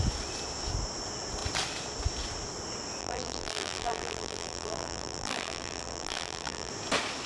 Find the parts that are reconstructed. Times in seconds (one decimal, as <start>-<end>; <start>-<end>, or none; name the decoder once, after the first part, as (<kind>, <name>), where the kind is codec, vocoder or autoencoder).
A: 3.0-6.7 (vocoder, BigVGAN v2)